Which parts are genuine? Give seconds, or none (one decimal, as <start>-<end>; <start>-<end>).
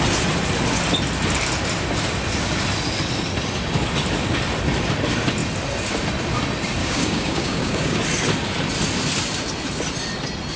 0.0-6.8; 8.0-10.6